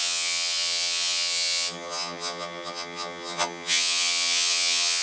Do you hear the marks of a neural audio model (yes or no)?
yes